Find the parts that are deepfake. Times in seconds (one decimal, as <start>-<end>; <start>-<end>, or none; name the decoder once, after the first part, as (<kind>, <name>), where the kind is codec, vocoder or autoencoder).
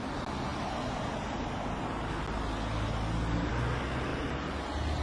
4.1-5.0 (vocoder, BigVGAN v2)